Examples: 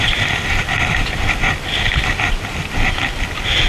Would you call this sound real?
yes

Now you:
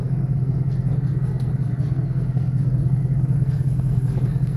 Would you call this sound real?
no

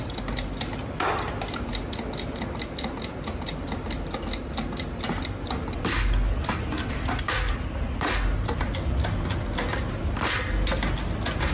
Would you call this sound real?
yes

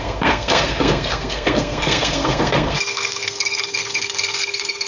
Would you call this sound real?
no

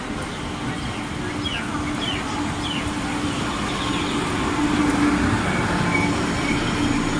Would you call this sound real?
yes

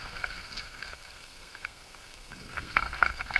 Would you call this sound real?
no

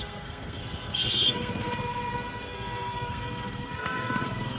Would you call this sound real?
no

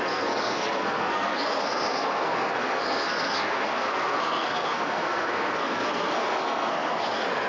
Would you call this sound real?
no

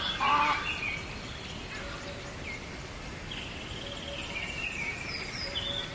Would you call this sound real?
yes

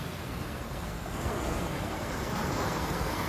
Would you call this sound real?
no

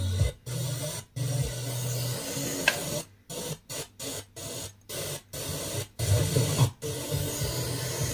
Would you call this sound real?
yes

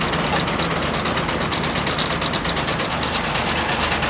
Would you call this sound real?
yes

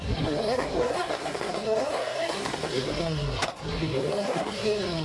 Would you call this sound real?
no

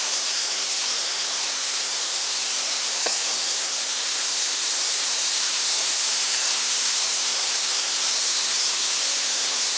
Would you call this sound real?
no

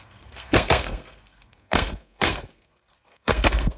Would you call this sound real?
no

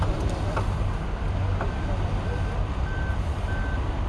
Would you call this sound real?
yes